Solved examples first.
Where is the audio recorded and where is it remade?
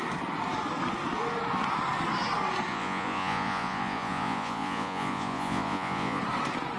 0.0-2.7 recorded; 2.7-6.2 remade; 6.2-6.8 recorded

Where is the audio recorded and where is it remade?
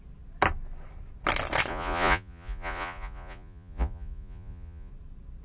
0.0-1.7 recorded; 1.7-4.9 remade; 4.9-5.4 recorded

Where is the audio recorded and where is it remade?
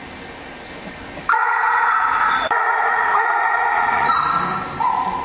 0.0-1.4 recorded; 1.4-4.2 remade; 4.2-5.2 recorded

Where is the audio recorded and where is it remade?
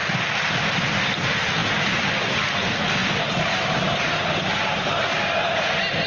0.0-6.1 recorded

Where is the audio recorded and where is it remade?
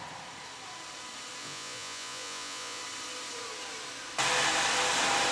0.0-1.4 recorded; 1.4-2.8 remade; 2.8-5.3 recorded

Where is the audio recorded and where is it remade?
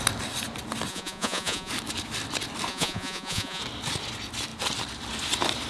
0.0-0.9 recorded; 0.9-1.7 remade; 1.7-2.7 recorded; 2.7-3.6 remade; 3.6-5.7 recorded